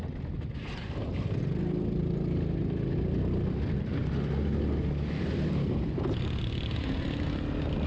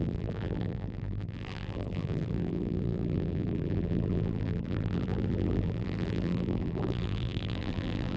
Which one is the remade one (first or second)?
second